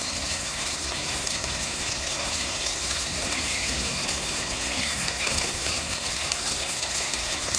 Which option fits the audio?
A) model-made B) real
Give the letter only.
A